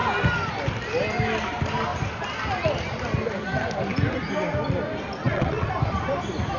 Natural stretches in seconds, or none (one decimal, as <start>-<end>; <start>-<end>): 0.0-5.2; 5.7-6.6